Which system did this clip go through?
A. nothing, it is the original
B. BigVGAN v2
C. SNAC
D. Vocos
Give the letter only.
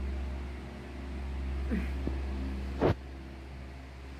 A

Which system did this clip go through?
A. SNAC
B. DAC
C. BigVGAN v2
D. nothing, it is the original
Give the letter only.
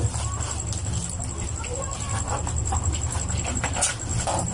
D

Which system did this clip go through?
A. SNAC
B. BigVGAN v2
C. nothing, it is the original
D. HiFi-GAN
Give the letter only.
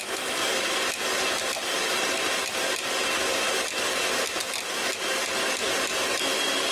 C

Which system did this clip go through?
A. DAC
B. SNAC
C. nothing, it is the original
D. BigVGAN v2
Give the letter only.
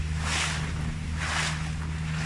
C